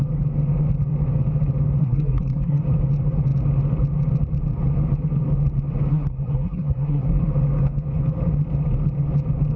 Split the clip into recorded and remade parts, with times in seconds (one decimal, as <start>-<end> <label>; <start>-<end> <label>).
0.0-1.8 recorded; 1.8-2.6 remade; 2.6-5.9 recorded; 5.9-7.2 remade; 7.2-9.6 recorded